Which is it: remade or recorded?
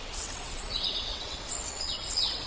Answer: remade